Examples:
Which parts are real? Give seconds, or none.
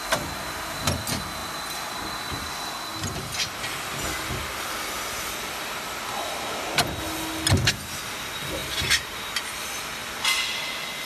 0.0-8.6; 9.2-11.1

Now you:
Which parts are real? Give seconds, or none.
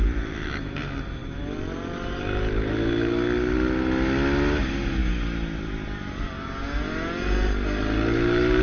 0.5-8.6